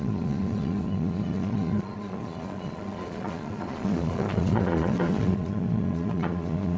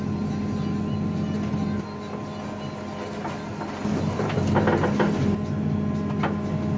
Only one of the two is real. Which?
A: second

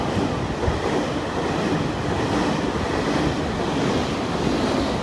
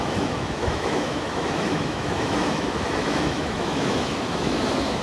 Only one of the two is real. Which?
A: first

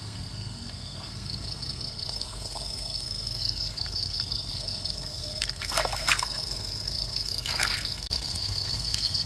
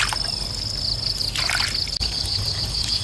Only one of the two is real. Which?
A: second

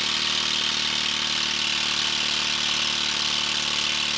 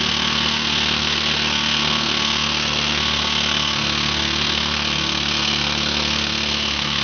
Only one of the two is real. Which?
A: first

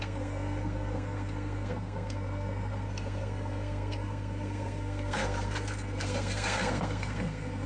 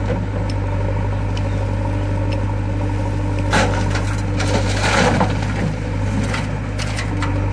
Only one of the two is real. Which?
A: second